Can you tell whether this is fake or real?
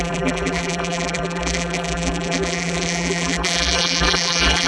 fake